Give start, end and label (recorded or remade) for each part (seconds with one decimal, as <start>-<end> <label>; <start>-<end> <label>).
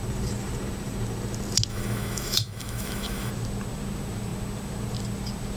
0.0-1.7 recorded; 1.7-3.3 remade; 3.3-5.6 recorded